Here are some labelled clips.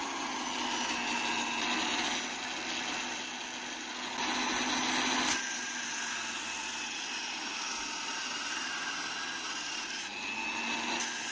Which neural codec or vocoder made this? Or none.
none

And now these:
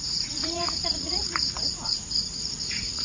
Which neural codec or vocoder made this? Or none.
vocoder, Vocos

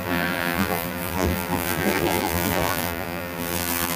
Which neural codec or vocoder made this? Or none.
vocoder, BigVGAN v2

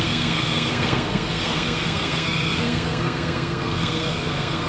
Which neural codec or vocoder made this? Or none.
codec, SNAC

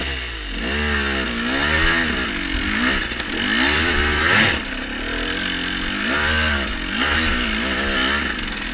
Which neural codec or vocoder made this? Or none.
none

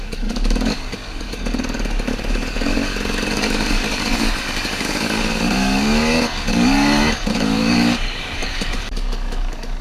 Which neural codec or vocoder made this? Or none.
codec, DAC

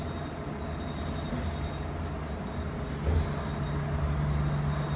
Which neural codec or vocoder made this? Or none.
none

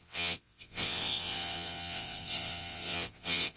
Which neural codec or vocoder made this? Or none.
vocoder, WaveNeXt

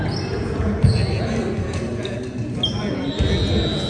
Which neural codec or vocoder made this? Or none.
none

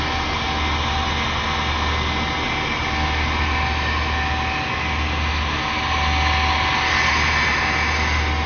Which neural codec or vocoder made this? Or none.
none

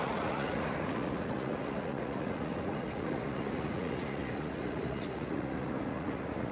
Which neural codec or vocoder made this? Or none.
vocoder, Vocos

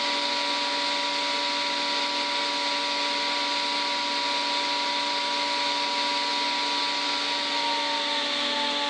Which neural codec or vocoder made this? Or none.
none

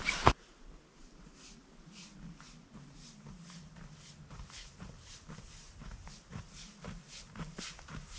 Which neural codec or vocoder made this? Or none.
none